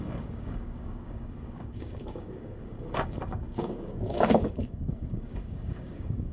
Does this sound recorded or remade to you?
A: remade